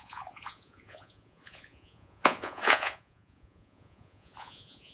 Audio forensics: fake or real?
fake